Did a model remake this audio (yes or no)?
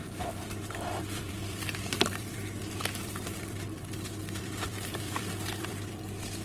yes